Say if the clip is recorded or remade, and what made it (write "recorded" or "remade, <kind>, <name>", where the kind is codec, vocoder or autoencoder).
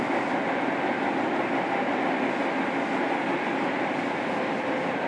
recorded